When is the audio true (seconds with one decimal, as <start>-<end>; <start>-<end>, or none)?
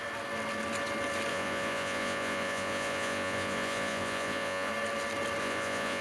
0.0-1.3; 4.7-5.4